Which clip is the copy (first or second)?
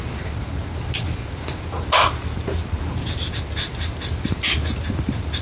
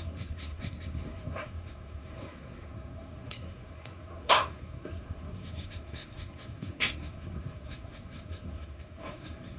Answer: second